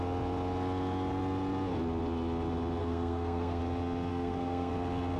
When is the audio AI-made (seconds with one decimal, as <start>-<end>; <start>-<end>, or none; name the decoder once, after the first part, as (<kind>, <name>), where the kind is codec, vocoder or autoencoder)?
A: 2.8-3.6 (codec, SNAC); 4.1-4.7